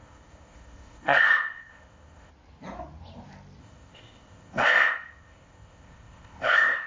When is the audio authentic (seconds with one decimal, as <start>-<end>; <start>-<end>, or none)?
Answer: 2.3-3.6